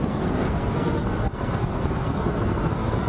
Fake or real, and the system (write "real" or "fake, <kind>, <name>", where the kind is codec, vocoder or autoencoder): fake, codec, SNAC